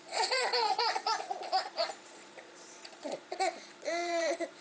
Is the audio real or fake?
fake